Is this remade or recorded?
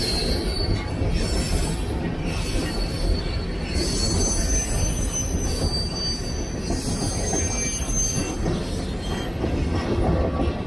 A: recorded